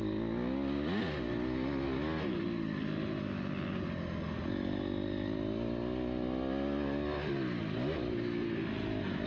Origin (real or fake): real